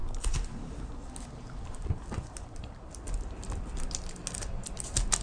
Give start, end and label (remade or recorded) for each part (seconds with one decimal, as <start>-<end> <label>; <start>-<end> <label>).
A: 0.0-5.2 recorded